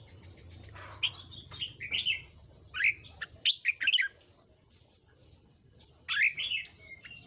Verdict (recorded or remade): recorded